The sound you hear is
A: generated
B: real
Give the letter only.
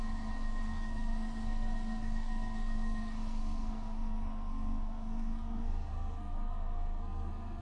A